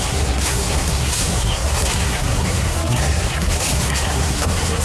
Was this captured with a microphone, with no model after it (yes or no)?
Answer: no